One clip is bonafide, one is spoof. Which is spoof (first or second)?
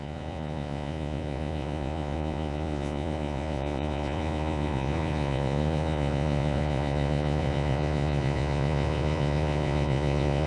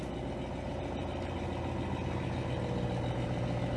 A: first